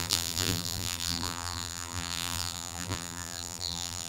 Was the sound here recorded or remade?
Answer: remade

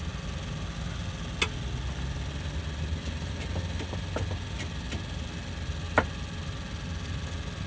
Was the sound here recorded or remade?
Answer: recorded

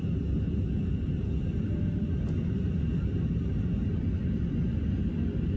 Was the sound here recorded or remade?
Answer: recorded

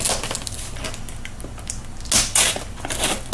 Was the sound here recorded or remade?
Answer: recorded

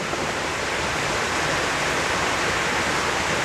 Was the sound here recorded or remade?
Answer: recorded